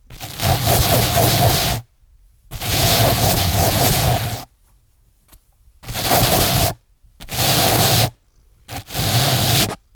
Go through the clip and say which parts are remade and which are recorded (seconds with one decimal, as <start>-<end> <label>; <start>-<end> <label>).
0.0-2.7 recorded; 2.7-4.1 remade; 4.1-9.9 recorded